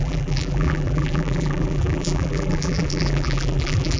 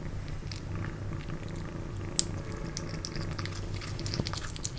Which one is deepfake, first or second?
first